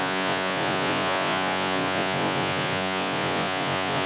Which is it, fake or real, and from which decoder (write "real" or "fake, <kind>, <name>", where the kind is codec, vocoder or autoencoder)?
fake, vocoder, Vocos